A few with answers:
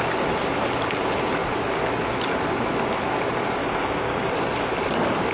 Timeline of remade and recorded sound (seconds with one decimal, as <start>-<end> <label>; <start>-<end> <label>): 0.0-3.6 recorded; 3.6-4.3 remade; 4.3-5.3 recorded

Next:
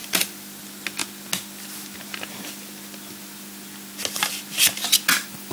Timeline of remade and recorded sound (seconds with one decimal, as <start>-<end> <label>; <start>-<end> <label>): 0.0-0.6 remade; 0.6-5.5 recorded

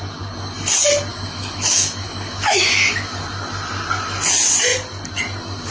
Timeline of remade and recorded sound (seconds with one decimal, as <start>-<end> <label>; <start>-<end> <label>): 0.0-1.1 recorded; 1.1-3.2 remade; 3.2-5.7 recorded

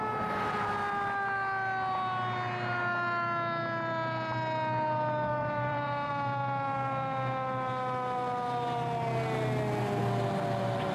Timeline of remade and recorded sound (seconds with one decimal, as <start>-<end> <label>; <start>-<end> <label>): 0.0-5.4 recorded; 5.4-6.1 remade; 6.1-10.9 recorded

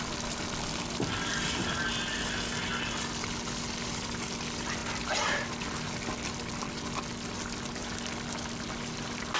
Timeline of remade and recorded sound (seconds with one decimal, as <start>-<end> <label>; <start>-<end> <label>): 0.0-9.4 recorded